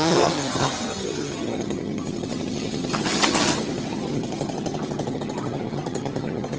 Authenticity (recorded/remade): remade